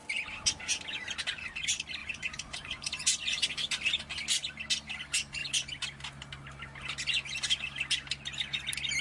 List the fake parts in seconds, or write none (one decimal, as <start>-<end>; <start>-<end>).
2.0-3.5